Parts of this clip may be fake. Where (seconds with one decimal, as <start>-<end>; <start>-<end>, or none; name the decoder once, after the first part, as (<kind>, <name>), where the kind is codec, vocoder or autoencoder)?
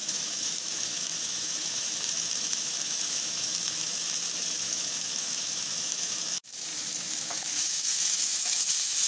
0.0-9.1 (autoencoder, DAC-VAE)